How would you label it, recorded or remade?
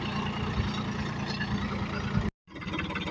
recorded